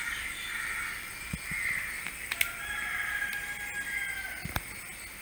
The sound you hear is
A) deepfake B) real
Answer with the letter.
B